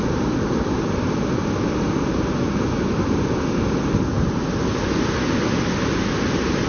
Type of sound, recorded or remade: recorded